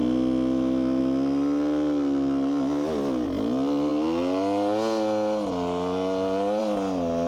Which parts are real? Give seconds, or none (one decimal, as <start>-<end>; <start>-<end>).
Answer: 0.0-7.3